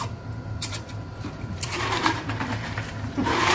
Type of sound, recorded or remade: remade